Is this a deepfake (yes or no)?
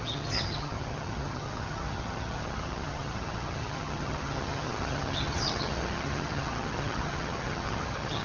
yes